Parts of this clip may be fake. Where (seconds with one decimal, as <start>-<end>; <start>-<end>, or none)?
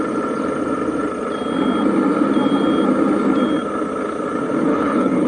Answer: 4.7-5.3